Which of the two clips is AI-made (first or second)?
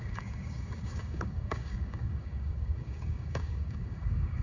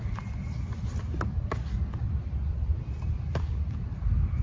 first